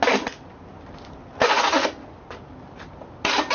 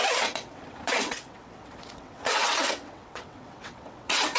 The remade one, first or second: second